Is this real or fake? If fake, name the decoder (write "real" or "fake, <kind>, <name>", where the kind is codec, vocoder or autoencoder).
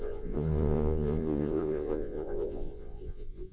fake, vocoder, Vocos